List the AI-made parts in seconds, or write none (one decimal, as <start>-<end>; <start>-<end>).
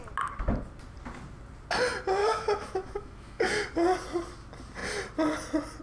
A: 2.2-3.5